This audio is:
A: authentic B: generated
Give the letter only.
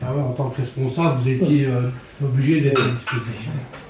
A